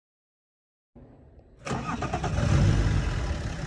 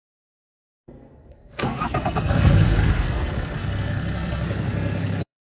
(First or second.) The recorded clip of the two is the first